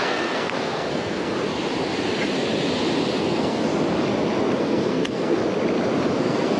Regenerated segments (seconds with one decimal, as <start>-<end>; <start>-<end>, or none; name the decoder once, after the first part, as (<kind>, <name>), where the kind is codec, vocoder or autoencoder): 0.0-1.3 (codec, SNAC); 3.2-3.7; 4.6-5.4; 6.1-6.6